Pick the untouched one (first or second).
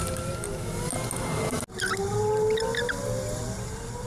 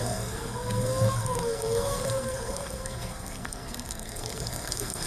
first